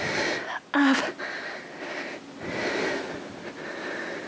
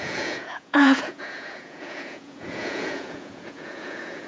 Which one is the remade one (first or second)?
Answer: second